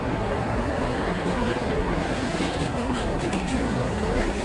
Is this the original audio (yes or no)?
no